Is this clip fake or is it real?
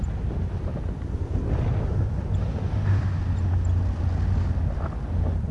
real